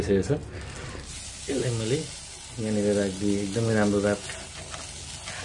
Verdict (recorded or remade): recorded